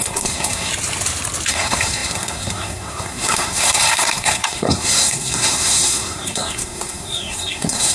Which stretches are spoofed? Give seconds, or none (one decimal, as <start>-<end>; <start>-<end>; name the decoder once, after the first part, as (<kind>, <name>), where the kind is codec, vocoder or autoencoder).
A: 0.0-0.7 (codec, SNAC); 1.5-7.9